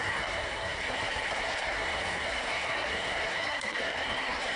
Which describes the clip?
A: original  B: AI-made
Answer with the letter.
B